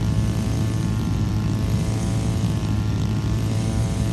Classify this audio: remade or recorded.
recorded